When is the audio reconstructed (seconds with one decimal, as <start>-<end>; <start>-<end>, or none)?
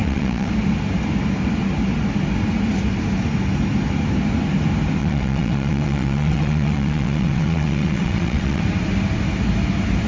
0.0-0.5; 5.0-8.6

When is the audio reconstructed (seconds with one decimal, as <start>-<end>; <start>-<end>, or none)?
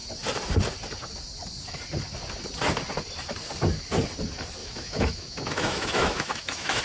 4.6-6.8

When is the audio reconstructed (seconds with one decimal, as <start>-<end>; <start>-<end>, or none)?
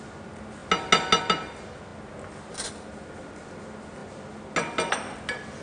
none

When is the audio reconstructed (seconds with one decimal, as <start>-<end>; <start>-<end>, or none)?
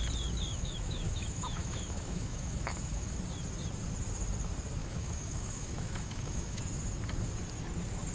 0.5-3.2; 4.8-6.6